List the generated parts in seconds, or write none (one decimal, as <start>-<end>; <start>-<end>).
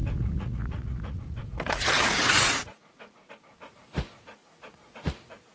0.0-3.3; 4.4-5.5